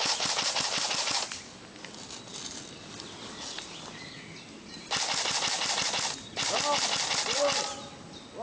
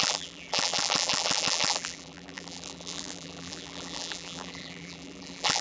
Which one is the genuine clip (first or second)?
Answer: first